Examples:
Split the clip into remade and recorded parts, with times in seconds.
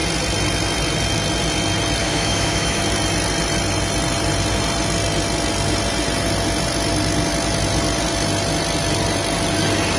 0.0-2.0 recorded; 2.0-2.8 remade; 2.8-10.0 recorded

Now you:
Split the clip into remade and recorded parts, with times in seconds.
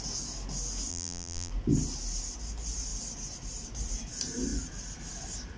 0.0-0.9 recorded; 0.9-1.5 remade; 1.5-5.6 recorded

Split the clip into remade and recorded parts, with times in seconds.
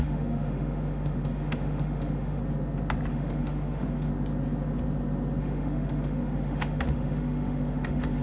0.0-2.4 remade; 2.4-3.1 recorded; 3.1-4.1 remade; 4.1-5.4 recorded; 5.4-8.2 remade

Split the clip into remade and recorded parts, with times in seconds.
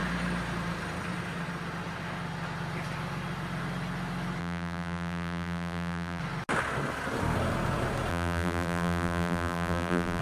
0.0-4.4 recorded; 4.4-6.2 remade; 6.2-8.1 recorded; 8.1-10.2 remade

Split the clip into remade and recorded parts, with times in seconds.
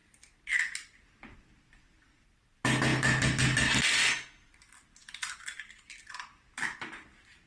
0.0-7.5 recorded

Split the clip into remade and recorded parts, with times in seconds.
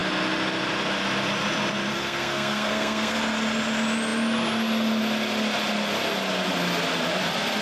0.0-1.9 recorded; 1.9-3.2 remade; 3.2-7.6 recorded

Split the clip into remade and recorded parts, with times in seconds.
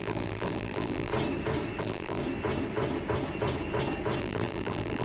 0.0-1.1 remade; 1.1-1.8 recorded; 1.8-2.2 remade; 2.2-4.2 recorded; 4.2-5.0 remade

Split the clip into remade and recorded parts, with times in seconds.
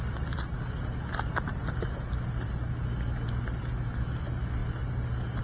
0.0-5.4 recorded